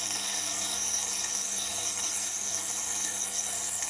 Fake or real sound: fake